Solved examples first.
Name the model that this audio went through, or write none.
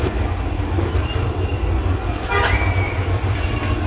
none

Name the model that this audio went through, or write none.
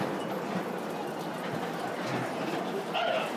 vocoder, BigVGAN v2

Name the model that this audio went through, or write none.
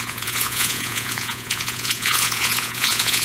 vocoder, Vocos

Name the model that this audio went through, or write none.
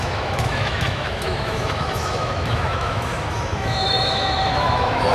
autoencoder, DAC-VAE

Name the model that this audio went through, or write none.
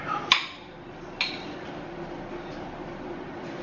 none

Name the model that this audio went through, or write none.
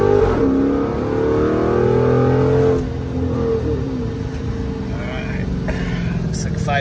none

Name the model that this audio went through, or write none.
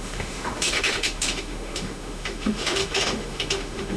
autoencoder, DAC-VAE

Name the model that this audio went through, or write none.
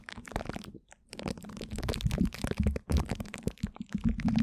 vocoder, BigVGAN v2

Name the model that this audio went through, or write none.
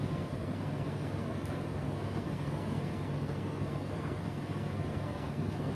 codec, SNAC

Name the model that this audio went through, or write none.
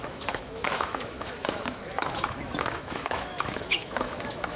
autoencoder, DAC-VAE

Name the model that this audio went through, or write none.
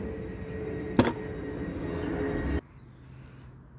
none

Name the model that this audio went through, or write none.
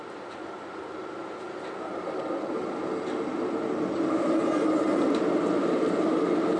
none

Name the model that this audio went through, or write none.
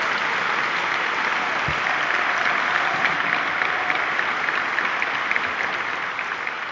none